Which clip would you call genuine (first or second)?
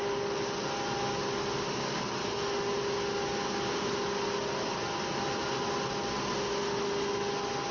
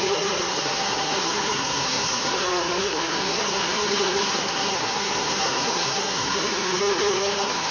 first